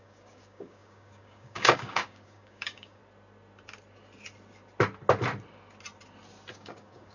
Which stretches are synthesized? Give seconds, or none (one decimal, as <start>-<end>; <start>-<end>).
0.0-3.0; 6.5-7.1